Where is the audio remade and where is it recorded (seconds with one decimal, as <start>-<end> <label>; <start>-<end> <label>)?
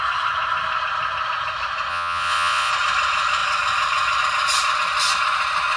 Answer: 0.0-1.9 recorded; 1.9-2.7 remade; 2.7-5.8 recorded